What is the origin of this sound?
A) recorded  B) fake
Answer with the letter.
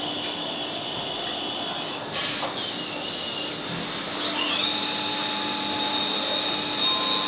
A